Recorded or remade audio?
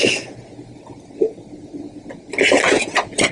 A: recorded